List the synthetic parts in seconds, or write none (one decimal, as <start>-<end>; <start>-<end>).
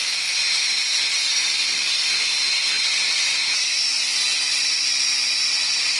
none